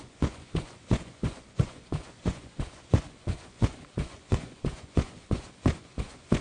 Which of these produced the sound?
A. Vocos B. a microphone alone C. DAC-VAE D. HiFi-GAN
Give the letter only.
A